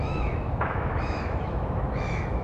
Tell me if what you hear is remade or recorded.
remade